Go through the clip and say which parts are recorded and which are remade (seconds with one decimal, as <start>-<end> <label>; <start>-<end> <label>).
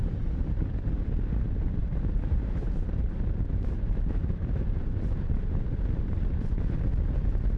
0.0-0.8 remade; 0.8-1.8 recorded; 1.8-6.4 remade; 6.4-7.6 recorded